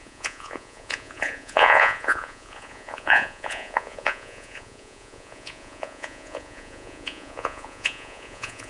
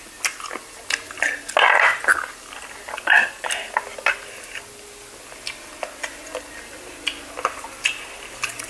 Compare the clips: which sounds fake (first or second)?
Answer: first